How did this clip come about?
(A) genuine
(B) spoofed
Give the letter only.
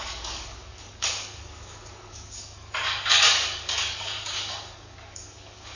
B